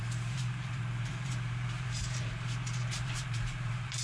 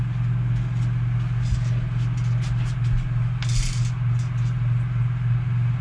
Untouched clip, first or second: second